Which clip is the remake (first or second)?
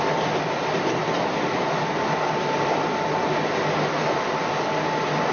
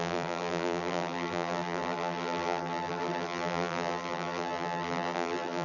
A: second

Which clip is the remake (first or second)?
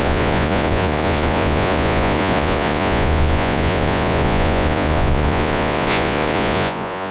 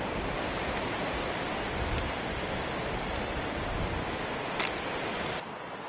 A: first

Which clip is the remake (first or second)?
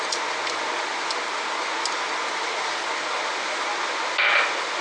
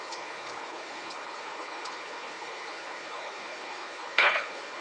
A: second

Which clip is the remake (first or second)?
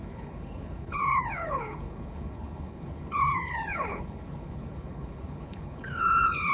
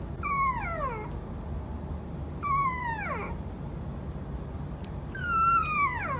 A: first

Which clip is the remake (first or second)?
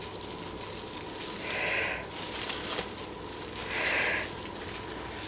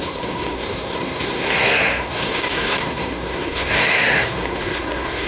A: second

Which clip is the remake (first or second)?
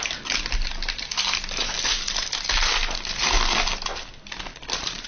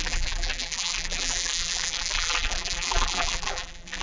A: second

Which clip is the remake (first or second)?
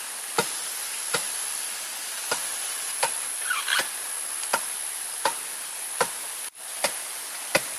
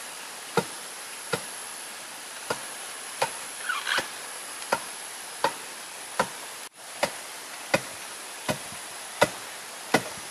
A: second